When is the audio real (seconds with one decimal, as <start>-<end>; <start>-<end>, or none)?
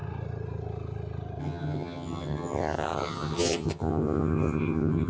0.0-1.4